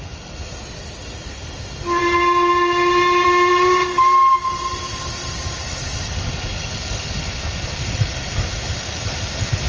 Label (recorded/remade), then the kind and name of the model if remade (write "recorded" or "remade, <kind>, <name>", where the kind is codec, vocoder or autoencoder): recorded